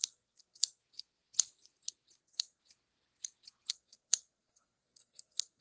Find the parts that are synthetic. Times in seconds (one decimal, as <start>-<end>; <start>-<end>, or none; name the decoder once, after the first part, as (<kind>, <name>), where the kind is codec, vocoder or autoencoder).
0.0-0.8 (codec, SNAC); 2.2-2.6; 3.7-5.6